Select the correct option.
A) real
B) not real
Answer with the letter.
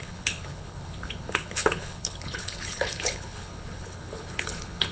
B